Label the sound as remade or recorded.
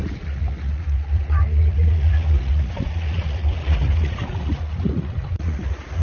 remade